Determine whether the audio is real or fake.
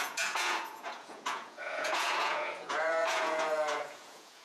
fake